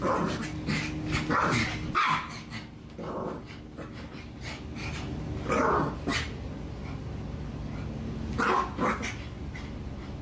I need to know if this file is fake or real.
real